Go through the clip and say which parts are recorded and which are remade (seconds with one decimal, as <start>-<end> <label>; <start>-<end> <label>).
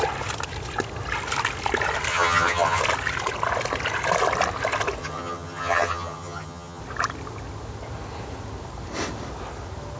0.0-2.1 recorded; 2.1-2.8 remade; 2.8-5.0 recorded; 5.0-6.8 remade; 6.8-10.0 recorded